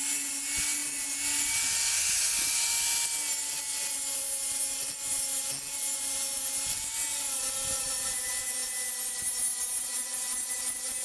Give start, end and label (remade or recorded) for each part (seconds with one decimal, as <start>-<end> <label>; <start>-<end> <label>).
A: 0.0-11.0 recorded

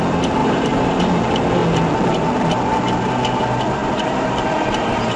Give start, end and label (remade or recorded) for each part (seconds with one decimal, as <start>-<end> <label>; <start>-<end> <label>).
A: 0.0-0.4 recorded; 0.4-1.0 remade; 1.0-3.8 recorded; 3.8-5.2 remade

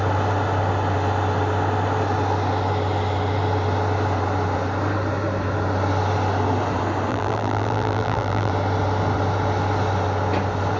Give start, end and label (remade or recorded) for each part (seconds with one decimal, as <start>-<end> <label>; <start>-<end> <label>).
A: 0.0-7.1 recorded; 7.1-8.5 remade; 8.5-10.8 recorded

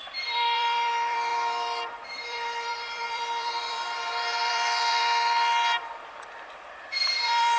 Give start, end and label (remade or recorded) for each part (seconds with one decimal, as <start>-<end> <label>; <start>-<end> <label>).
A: 0.0-7.6 remade